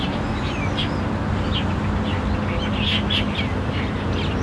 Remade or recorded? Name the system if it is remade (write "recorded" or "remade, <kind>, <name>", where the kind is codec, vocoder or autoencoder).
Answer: recorded